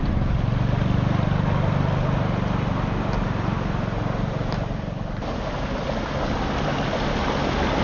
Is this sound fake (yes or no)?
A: no